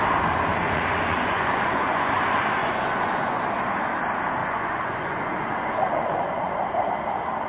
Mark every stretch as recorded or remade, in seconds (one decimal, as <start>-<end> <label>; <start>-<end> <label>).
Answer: 0.0-0.5 recorded; 0.5-2.1 remade; 2.1-2.6 recorded; 2.6-3.4 remade; 3.4-4.4 recorded; 4.4-6.7 remade; 6.7-7.5 recorded